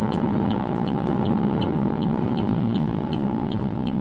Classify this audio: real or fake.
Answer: fake